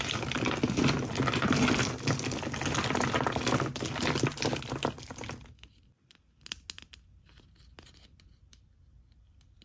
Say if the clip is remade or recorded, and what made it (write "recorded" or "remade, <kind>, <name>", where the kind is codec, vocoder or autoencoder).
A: recorded